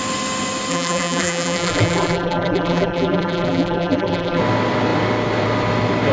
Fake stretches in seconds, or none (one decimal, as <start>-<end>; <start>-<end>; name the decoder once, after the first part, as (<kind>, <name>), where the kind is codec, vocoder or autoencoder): 0.7-4.4 (vocoder, BigVGAN v2)